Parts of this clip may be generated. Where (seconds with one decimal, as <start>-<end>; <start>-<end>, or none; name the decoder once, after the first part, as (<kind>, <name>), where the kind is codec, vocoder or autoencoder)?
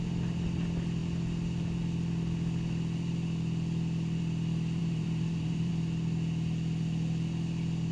4.8-5.7 (vocoder, BigVGAN v2)